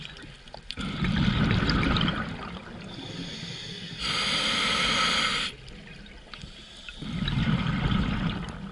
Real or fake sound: real